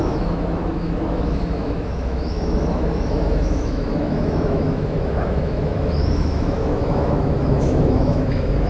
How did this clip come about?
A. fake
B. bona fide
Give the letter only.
A